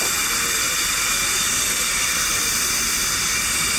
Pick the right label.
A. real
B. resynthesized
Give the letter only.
A